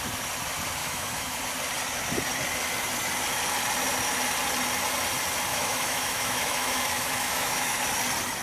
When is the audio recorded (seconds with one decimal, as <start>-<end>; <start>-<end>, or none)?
0.0-0.8; 1.4-5.5; 7.8-8.4